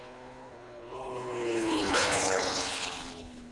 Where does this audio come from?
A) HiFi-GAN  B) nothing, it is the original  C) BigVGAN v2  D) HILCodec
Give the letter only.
D